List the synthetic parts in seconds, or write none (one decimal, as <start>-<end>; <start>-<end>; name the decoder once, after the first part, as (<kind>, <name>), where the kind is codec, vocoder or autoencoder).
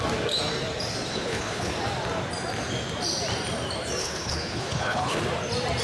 1.1-1.7 (codec, HILCodec); 4.0-5.2